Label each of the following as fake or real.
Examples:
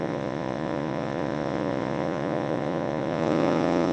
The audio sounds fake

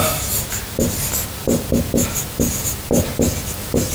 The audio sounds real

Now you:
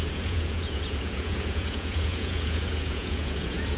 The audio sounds fake